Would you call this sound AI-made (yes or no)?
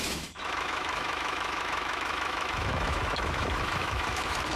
yes